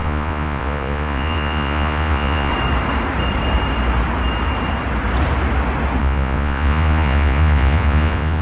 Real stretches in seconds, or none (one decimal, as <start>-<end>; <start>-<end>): 2.5-6.0